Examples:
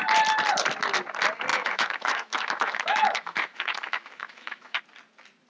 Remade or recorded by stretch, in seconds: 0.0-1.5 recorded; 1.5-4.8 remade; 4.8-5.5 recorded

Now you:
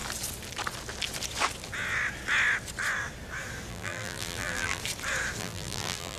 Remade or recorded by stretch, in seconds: 0.0-3.7 recorded; 3.7-4.8 remade; 4.8-5.4 recorded; 5.4-6.2 remade

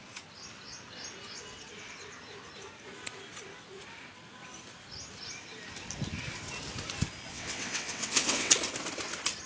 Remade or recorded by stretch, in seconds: 0.0-7.3 recorded; 7.3-8.5 remade; 8.5-9.5 recorded

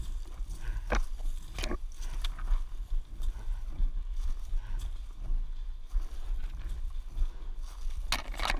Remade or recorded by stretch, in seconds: 0.0-8.6 recorded

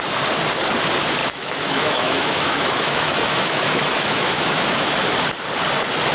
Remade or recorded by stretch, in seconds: 0.0-1.2 recorded; 1.2-4.9 remade; 4.9-6.1 recorded

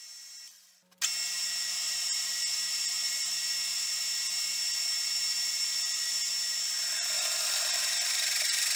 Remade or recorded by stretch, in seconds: 0.0-1.7 recorded; 1.7-6.3 remade; 6.3-8.8 recorded

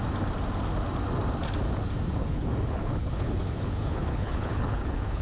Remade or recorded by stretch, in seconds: 0.0-2.2 recorded; 2.2-5.2 remade

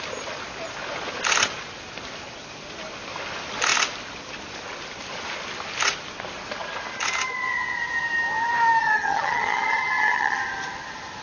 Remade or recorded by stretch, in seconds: 0.0-8.8 recorded; 8.8-10.4 remade; 10.4-11.2 recorded